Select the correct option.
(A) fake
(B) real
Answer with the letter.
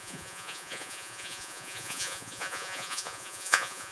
A